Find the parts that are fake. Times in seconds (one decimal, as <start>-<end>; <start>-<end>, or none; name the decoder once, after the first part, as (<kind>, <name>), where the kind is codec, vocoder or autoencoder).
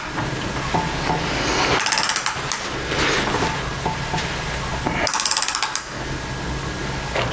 none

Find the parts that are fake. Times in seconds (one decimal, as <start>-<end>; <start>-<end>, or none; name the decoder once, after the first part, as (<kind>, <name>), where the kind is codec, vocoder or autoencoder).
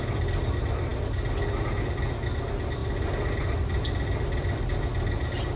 none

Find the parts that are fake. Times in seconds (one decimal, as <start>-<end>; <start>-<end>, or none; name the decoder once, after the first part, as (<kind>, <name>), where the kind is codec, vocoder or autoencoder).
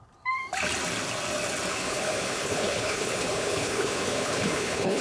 1.7-5.0 (codec, HILCodec)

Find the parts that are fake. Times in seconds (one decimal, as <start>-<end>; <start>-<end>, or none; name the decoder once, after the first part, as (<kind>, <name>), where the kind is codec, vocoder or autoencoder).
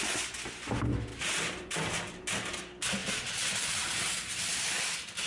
1.1-2.6 (vocoder, BigVGAN v2); 3.0-4.1